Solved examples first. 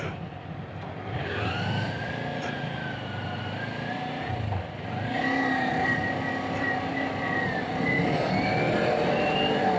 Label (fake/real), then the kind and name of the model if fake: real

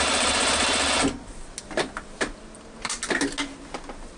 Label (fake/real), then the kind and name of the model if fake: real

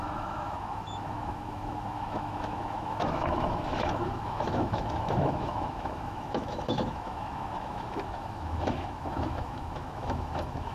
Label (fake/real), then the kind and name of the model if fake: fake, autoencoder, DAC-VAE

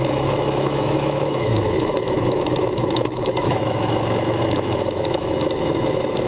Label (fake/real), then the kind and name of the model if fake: fake, autoencoder, DAC-VAE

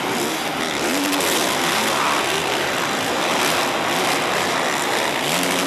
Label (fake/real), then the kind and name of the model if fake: real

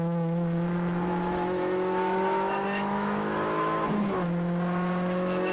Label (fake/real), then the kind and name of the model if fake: fake, autoencoder, DAC-VAE